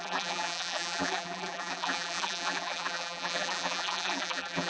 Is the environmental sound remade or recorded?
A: remade